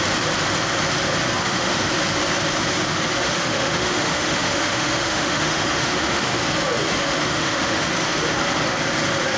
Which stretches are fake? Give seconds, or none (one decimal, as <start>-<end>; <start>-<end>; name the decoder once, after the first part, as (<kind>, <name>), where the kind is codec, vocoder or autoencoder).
1.4-1.9 (autoencoder, DAC-VAE); 3.2-6.4; 7.0-7.9